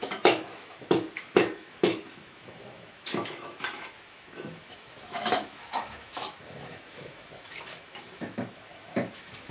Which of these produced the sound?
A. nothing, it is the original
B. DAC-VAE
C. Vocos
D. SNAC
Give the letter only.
B